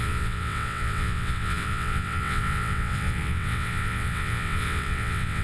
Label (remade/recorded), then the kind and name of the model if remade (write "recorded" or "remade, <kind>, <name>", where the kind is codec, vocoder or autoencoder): remade, vocoder, WaveNeXt